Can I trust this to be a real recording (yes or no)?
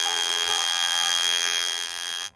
no